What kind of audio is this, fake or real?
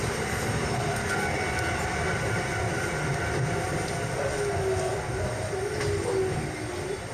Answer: real